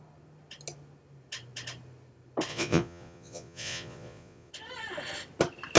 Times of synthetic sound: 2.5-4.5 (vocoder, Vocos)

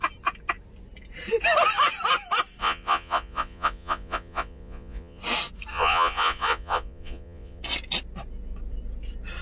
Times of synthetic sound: 2.6-5.2 (vocoder, Vocos); 5.7-7.6